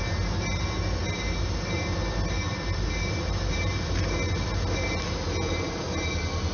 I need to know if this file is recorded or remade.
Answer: recorded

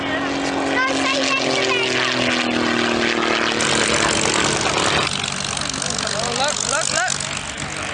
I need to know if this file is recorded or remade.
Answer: recorded